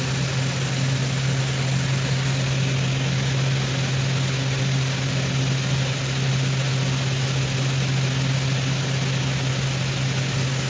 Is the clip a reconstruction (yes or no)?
no